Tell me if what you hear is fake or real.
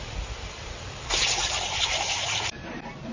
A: fake